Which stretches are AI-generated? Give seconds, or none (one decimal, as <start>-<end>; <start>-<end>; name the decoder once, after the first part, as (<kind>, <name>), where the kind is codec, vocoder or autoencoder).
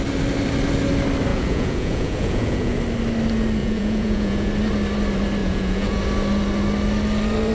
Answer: 1.3-2.8 (vocoder, Vocos); 3.6-4.5; 5.4-6.0